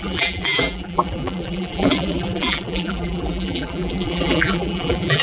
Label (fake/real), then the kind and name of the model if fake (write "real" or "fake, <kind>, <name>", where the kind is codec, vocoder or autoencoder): fake, vocoder, BigVGAN v2